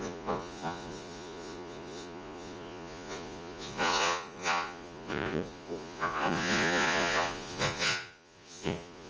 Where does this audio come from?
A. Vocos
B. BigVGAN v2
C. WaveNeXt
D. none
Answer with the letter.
A